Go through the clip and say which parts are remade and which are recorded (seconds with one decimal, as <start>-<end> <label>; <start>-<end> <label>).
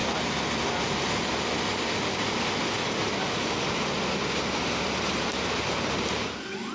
0.0-6.7 recorded